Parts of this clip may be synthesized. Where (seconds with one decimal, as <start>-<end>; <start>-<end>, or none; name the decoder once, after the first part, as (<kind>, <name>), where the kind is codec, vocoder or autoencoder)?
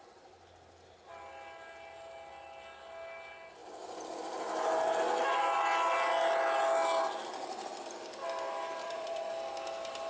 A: 8.8-9.3 (vocoder, Vocos)